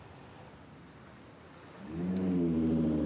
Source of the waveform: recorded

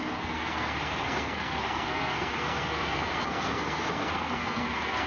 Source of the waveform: remade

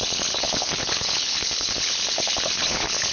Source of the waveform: remade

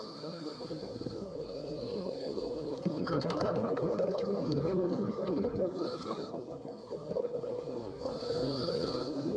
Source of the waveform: remade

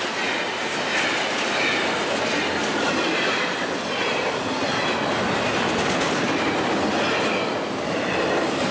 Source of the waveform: recorded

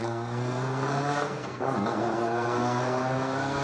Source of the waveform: remade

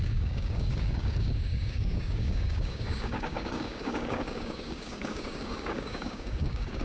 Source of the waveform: remade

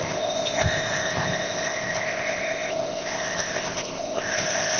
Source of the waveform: remade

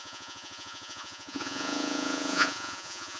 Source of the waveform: remade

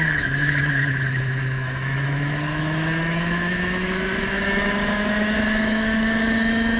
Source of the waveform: remade